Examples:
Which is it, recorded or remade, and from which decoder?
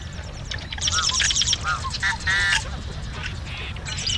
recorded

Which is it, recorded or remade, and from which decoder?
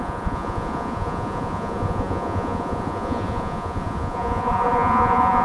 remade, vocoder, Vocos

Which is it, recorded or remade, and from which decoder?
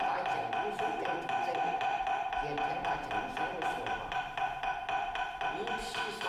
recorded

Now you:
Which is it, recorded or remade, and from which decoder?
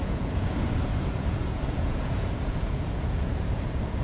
remade, vocoder, Vocos